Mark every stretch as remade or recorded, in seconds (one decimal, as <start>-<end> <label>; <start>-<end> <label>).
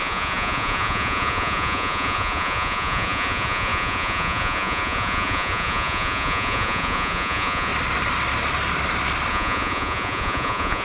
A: 0.0-7.7 remade; 7.7-9.3 recorded; 9.3-10.8 remade